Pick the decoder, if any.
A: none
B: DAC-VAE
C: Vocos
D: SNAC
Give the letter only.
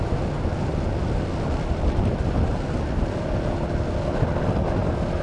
A